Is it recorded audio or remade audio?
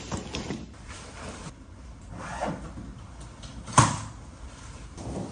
remade